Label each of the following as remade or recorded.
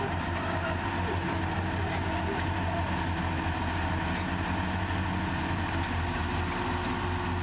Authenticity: recorded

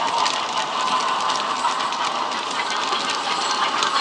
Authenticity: recorded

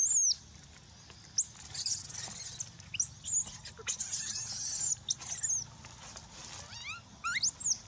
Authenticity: recorded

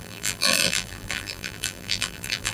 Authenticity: remade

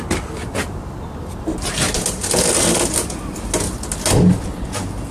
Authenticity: recorded